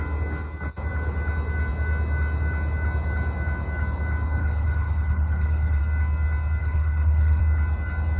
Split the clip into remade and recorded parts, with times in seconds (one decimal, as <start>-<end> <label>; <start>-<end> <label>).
0.0-4.4 recorded; 4.4-5.8 remade; 5.8-6.6 recorded; 6.6-7.4 remade; 7.4-8.2 recorded